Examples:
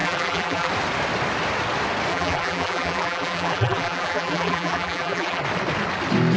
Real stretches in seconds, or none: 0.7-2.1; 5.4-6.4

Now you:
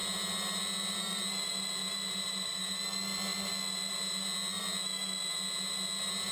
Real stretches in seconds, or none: 0.0-1.8; 2.8-6.3